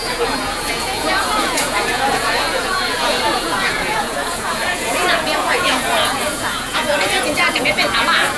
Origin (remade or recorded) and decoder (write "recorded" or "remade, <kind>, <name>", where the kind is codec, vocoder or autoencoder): remade, vocoder, Vocos